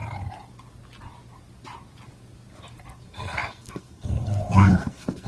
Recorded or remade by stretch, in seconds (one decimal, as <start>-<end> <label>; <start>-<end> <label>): 0.0-3.0 recorded; 3.0-5.3 remade